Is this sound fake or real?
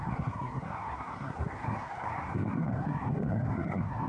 fake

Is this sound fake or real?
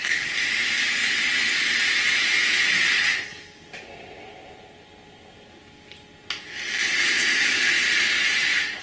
real